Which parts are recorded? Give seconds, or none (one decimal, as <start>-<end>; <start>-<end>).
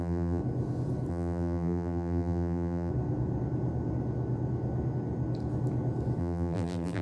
0.4-1.1; 2.9-6.2